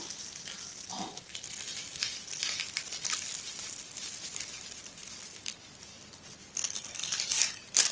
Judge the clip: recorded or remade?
recorded